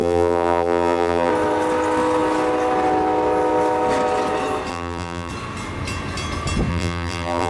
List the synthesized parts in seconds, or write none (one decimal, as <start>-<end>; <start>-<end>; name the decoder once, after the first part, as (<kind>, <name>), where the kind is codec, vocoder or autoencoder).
0.0-1.3 (vocoder, BigVGAN v2); 4.7-5.3; 6.7-7.5